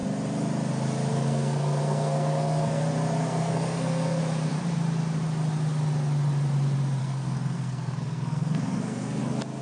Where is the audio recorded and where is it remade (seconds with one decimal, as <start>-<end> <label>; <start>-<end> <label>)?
0.0-1.1 recorded; 1.1-2.8 remade; 2.8-3.2 recorded; 3.2-4.2 remade; 4.2-7.0 recorded; 7.0-9.2 remade; 9.2-9.6 recorded